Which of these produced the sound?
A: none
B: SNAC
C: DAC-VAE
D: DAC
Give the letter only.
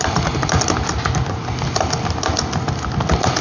A